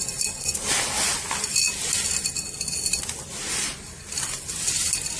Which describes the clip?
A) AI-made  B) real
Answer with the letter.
B